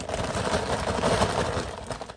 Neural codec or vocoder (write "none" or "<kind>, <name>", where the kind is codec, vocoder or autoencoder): none